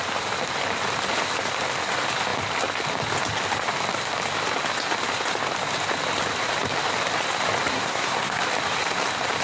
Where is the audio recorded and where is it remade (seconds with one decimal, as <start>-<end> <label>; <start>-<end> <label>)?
0.0-7.7 recorded; 7.7-8.4 remade; 8.4-9.4 recorded